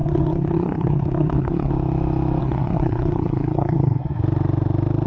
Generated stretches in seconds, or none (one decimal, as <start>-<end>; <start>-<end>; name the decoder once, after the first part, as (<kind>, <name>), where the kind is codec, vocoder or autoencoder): 0.0-1.7 (codec, SNAC); 2.4-4.2